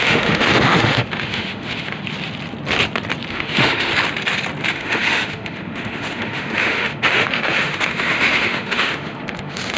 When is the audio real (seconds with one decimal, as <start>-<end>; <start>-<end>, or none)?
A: 2.0-3.3; 3.9-4.7